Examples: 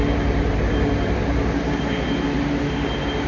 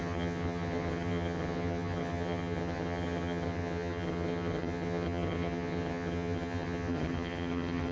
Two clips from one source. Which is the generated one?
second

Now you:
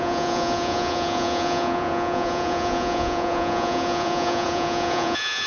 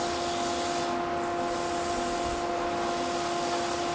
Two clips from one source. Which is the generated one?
first